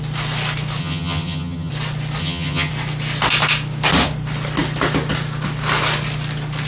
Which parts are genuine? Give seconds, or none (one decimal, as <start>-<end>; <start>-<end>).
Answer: 0.0-0.8; 1.7-2.2; 2.7-6.7